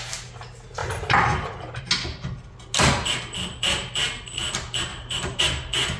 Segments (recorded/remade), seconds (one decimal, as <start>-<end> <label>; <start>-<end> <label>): 0.0-0.8 recorded; 0.8-1.8 remade; 1.8-4.9 recorded; 4.9-5.4 remade; 5.4-6.0 recorded

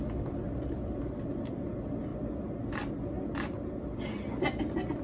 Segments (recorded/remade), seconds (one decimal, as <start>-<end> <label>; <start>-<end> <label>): 0.0-5.0 recorded

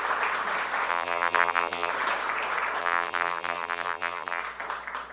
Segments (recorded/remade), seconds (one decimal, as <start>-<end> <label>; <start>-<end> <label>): 0.0-0.9 recorded; 0.9-1.9 remade; 1.9-2.8 recorded; 2.8-4.4 remade; 4.4-5.1 recorded